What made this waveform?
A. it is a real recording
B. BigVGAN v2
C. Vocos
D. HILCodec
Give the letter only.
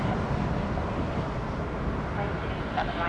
A